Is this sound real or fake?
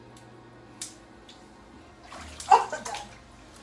real